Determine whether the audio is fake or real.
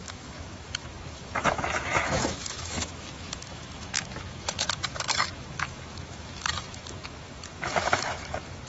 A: fake